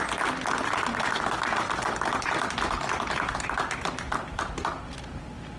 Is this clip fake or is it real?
real